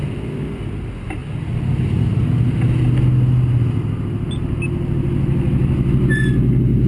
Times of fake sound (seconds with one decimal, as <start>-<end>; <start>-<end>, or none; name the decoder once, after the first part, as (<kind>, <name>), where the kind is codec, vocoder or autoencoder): none